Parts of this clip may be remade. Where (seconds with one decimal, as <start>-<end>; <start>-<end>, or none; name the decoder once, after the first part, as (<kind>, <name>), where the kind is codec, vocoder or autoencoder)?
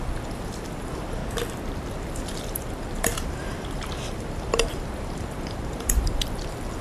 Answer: 0.0-1.2 (vocoder, BigVGAN v2); 1.9-6.8